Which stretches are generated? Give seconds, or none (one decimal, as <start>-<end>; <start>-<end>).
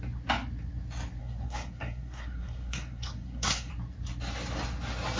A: 1.2-3.7